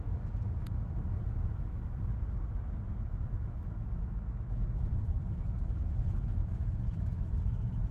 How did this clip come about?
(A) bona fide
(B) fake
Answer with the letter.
B